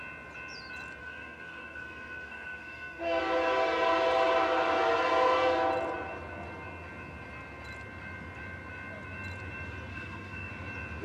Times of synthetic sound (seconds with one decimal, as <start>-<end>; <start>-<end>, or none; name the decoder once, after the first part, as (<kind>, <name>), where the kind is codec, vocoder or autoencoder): 1.0-3.2 (codec, SNAC); 9.9-10.5